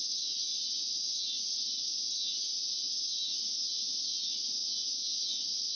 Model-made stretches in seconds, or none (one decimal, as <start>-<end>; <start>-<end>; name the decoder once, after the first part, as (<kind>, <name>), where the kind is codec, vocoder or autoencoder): none